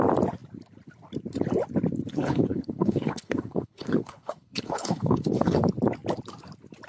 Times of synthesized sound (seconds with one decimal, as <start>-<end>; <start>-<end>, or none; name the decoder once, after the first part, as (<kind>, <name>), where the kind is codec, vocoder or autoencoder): 2.1-5.6 (codec, HILCodec)